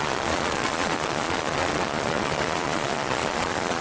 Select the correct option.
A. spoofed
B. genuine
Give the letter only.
A